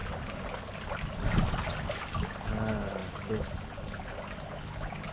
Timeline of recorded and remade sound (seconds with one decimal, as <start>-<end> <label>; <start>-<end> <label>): 0.0-5.1 recorded